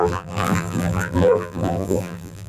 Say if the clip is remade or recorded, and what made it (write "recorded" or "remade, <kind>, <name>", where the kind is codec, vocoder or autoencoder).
remade, vocoder, BigVGAN v2